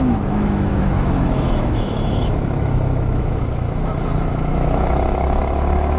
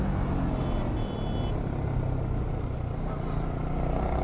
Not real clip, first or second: first